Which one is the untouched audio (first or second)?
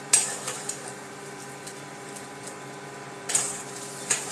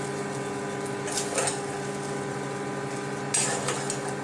second